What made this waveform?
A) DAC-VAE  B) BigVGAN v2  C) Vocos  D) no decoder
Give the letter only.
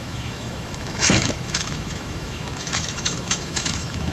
A